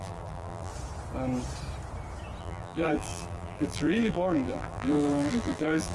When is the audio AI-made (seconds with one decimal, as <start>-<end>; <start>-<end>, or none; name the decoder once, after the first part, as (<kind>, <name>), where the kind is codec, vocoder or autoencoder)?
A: 0.0-0.7 (vocoder, BigVGAN v2); 2.4-5.9